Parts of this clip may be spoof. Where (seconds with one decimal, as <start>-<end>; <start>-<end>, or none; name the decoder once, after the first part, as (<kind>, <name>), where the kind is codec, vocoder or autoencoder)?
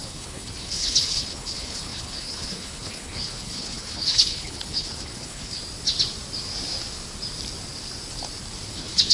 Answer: 0.0-5.6 (codec, HILCodec); 8.7-9.1